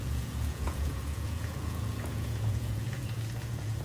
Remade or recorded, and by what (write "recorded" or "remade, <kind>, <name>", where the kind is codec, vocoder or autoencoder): remade, vocoder, Vocos